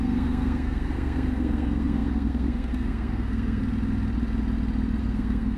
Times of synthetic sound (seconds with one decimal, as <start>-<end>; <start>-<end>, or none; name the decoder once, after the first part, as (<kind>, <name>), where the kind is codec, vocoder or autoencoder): 0.0-3.6 (codec, SNAC); 5.0-5.6